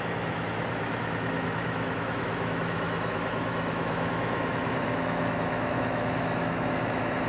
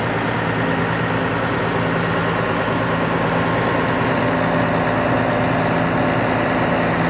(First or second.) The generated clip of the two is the first